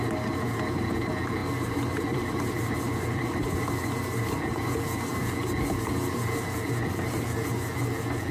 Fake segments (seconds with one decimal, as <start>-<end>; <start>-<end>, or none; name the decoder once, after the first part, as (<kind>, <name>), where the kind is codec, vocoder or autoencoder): 1.4-4.0 (vocoder, BigVGAN v2); 5.1-7.5